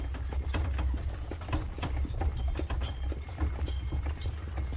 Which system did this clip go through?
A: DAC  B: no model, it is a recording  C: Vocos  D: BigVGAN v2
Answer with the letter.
B